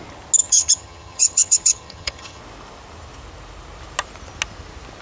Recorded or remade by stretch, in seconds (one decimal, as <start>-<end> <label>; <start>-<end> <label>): 0.0-0.4 recorded; 0.4-2.4 remade; 2.4-5.0 recorded